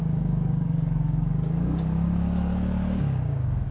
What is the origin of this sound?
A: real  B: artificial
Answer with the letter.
B